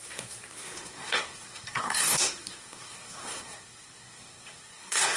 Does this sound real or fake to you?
fake